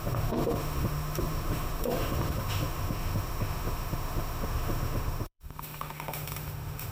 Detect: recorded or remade remade